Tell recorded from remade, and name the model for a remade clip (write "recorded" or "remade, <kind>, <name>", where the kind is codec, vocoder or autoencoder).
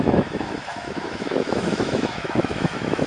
remade, autoencoder, DAC-VAE